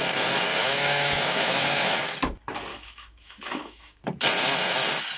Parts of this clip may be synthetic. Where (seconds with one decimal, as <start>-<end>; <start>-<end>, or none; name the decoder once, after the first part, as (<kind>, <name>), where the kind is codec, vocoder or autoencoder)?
0.6-2.0 (autoencoder, DAC-VAE); 2.7-4.0